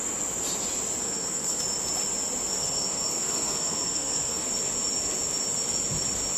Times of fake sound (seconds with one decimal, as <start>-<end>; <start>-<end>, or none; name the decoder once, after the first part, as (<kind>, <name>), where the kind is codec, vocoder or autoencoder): 1.0-1.6 (codec, SNAC); 2.5-4.5